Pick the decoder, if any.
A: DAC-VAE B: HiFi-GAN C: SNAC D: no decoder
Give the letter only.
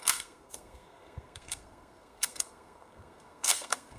C